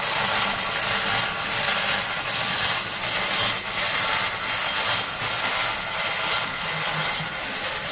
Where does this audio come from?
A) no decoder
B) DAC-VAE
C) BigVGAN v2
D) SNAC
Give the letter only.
C